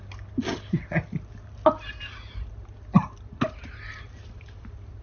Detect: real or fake real